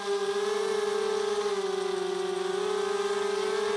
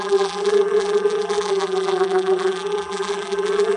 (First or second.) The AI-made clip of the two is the second